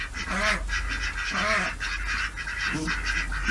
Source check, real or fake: real